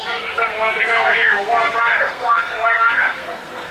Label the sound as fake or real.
fake